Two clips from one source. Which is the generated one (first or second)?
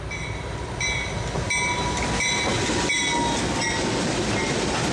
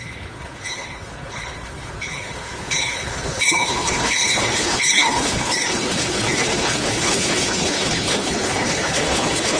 second